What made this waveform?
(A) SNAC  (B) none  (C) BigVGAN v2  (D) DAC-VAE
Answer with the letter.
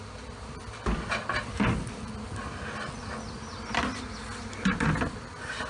B